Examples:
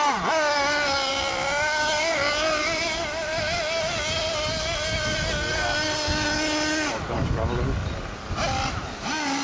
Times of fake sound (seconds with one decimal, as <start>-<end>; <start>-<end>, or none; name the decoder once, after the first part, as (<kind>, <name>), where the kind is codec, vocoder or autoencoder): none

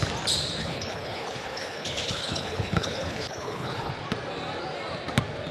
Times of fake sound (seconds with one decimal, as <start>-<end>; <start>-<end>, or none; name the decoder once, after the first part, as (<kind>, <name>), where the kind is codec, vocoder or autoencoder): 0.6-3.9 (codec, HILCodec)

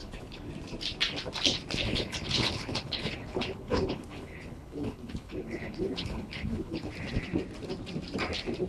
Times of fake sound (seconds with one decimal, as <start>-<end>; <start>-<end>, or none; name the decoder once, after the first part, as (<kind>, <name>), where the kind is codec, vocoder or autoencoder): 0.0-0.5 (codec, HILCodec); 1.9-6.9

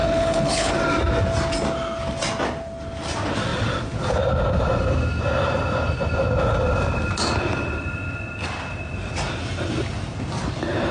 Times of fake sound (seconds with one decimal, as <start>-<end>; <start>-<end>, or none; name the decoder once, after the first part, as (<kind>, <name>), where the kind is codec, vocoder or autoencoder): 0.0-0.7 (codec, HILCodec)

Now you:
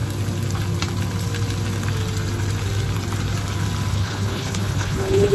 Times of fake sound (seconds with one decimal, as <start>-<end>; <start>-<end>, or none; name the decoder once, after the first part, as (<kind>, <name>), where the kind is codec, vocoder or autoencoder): 3.9-5.3 (codec, HILCodec)

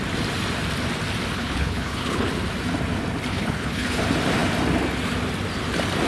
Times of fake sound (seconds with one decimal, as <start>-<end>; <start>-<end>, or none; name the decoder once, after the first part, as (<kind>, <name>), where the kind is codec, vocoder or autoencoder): 1.3-2.3 (codec, HILCodec); 3.3-4.0